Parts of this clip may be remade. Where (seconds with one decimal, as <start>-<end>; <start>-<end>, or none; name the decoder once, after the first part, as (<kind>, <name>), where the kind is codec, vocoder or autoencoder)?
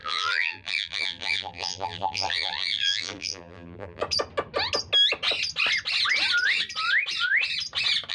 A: 0.0-4.0 (vocoder, BigVGAN v2)